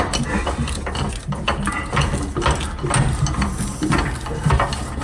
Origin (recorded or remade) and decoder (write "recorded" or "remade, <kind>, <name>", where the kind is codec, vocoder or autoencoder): recorded